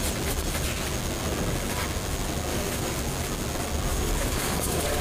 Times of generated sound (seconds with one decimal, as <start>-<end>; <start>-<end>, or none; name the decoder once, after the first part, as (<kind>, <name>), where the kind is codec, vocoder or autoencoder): 2.5-3.0 (codec, DAC); 3.9-5.0